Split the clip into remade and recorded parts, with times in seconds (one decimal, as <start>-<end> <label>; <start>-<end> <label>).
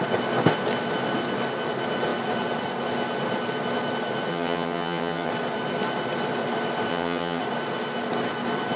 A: 0.0-4.3 recorded; 4.3-5.3 remade; 5.3-6.9 recorded; 6.9-7.4 remade; 7.4-8.8 recorded